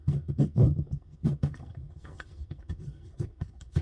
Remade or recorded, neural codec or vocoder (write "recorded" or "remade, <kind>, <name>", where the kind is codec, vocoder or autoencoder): remade, codec, SNAC